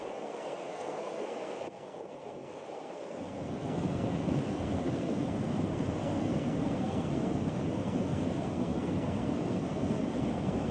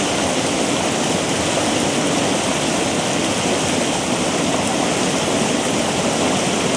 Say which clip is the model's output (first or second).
first